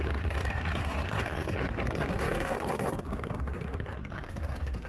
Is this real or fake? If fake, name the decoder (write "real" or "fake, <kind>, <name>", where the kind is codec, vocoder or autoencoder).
fake, codec, SNAC